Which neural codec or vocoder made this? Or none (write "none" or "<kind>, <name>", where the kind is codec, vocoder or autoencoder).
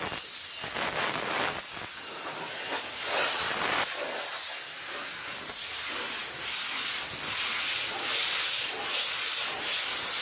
none